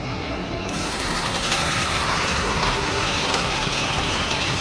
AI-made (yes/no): yes